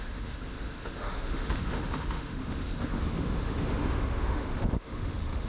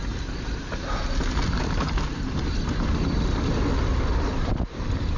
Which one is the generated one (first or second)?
first